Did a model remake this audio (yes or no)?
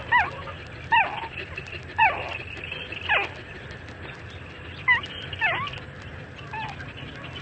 no